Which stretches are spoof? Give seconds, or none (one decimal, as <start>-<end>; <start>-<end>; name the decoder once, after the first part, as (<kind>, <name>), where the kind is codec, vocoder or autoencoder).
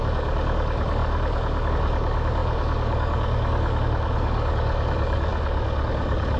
0.0-6.4 (codec, DAC)